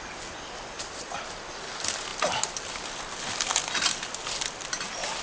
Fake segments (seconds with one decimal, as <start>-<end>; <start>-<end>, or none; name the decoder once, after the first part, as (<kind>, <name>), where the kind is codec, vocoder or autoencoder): none